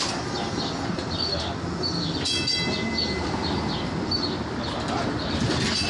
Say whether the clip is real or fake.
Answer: real